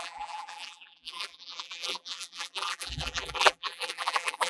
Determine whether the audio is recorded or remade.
remade